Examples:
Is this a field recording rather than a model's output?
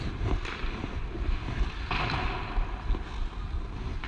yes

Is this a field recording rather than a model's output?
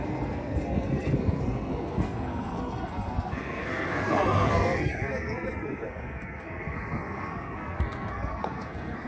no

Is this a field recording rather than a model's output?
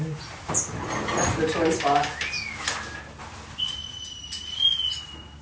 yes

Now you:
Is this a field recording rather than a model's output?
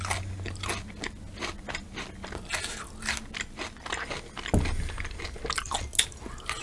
yes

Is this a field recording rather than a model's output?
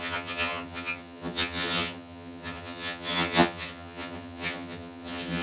no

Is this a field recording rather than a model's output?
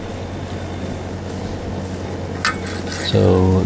yes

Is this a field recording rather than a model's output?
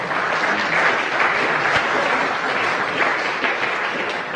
yes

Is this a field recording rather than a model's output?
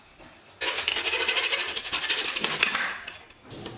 yes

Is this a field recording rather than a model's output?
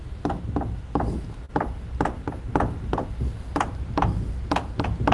yes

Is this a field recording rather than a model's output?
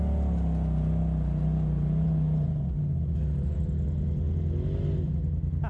yes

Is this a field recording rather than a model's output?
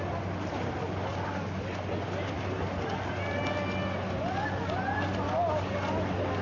yes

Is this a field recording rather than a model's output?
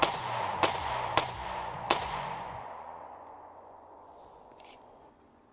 no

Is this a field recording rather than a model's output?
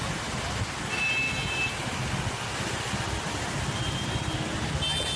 yes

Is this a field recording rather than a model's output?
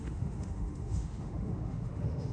no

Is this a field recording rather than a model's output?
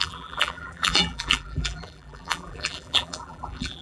no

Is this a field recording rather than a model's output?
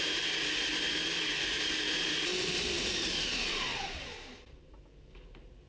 no